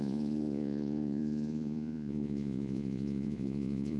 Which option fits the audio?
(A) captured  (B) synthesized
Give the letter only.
B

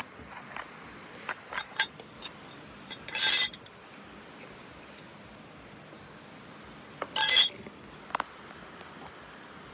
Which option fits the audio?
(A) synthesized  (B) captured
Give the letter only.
B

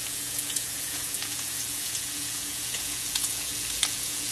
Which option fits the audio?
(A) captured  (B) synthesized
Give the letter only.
B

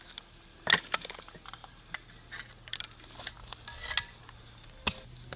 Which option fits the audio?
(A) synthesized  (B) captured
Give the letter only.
B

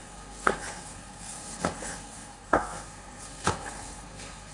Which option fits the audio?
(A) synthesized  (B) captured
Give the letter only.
A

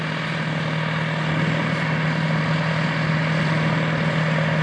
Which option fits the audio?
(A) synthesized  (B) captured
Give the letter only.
B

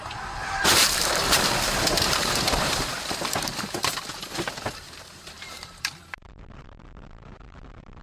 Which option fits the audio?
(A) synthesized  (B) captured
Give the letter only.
A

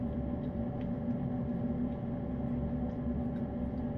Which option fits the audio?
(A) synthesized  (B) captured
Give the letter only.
B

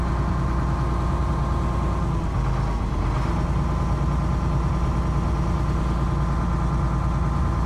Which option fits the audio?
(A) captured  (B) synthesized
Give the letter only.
A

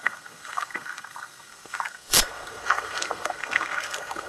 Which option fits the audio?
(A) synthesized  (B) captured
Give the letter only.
A